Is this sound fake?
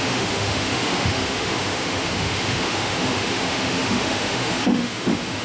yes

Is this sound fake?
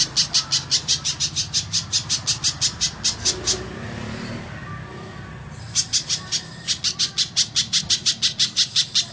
no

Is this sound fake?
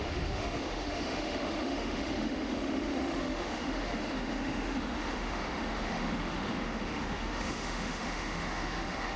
yes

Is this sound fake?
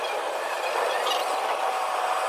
no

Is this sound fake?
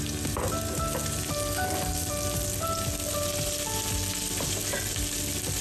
no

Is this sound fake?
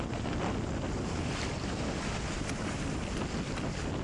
no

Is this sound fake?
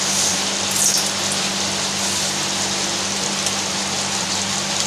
no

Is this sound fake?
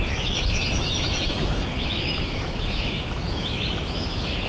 yes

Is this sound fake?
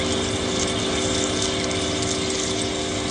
no